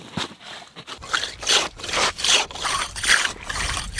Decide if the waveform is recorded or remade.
recorded